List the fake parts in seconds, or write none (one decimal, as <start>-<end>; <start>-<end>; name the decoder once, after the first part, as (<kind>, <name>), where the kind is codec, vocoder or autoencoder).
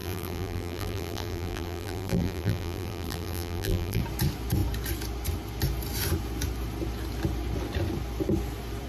0.0-4.0 (vocoder, BigVGAN v2)